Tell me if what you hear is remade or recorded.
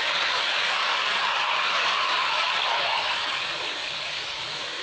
remade